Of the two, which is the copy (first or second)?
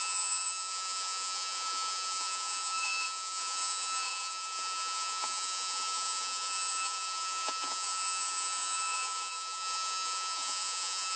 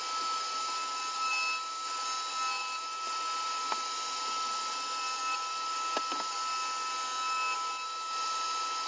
first